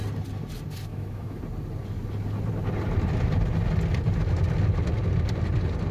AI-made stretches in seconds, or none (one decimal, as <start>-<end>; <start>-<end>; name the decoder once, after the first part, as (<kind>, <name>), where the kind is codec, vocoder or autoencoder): 0.9-1.4 (autoencoder, DAC-VAE)